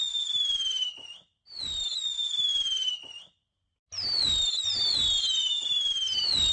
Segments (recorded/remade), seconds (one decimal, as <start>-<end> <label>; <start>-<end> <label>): 0.0-6.5 recorded